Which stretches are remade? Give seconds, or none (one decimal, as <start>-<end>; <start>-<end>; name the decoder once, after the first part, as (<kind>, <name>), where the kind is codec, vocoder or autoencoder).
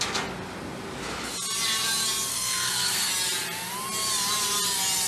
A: 2.3-3.1 (codec, SNAC)